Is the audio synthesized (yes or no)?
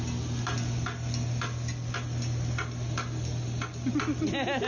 no